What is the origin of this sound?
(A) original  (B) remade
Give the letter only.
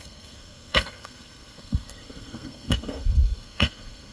B